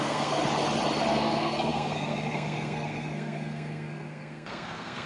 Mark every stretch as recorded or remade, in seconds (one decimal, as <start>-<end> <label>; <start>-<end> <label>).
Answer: 0.0-0.4 remade; 0.4-1.1 recorded; 1.1-5.1 remade